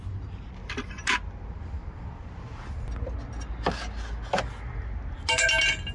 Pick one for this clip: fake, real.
real